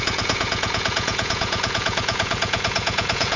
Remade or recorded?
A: remade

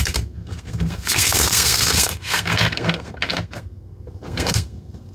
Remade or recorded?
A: remade